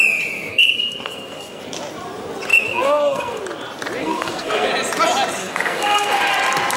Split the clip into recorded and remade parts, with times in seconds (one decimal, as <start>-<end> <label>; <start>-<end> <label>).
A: 0.0-0.5 recorded; 0.5-1.6 remade; 1.6-2.5 recorded; 2.5-3.4 remade; 3.4-4.0 recorded; 4.0-4.7 remade; 4.7-5.4 recorded; 5.4-6.3 remade; 6.3-6.8 recorded